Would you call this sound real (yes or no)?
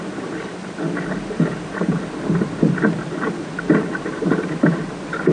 yes